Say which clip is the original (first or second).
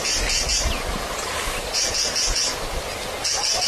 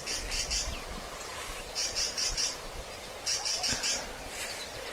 first